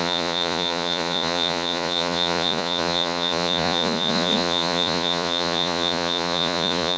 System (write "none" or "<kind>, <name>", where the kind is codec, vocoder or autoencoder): vocoder, Vocos